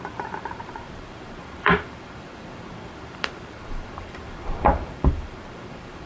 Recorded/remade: remade